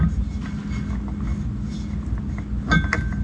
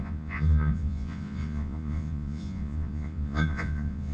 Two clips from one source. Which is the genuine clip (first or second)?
first